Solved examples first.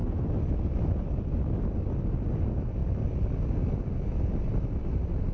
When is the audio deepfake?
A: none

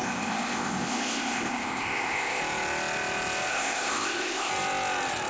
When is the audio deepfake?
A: 0.0-2.4 (codec, ZipCodec); 3.5-4.5

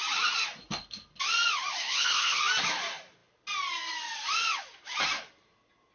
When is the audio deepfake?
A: 1.8-2.4 (codec, HILCodec)

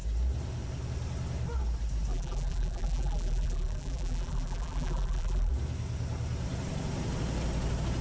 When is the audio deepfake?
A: 2.1-5.5 (vocoder, BigVGAN v2)

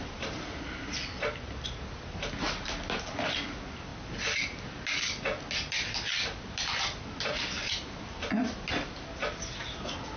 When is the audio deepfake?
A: none

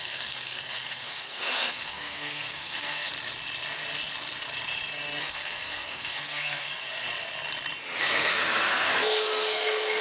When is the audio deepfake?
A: 0.0-3.1 (codec, SNAC); 5.2-6.8; 8.0-10.0

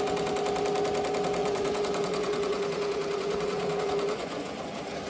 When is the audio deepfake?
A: 1.4-4.5 (vocoder, Vocos)